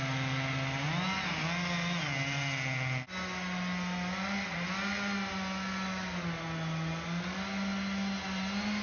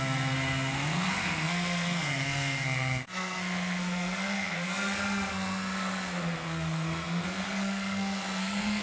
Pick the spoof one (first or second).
second